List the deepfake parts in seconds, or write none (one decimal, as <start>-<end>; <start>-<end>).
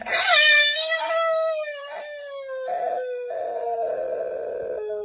0.6-1.1